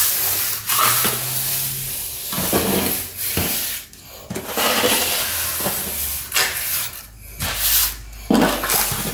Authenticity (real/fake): real